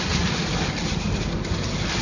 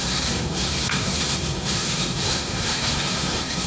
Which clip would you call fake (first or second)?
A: second